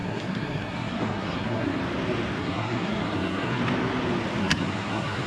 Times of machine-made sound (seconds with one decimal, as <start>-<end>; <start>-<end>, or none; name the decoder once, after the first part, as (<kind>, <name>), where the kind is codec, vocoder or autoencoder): 0.0-1.8 (codec, SNAC); 2.4-3.6; 4.4-5.3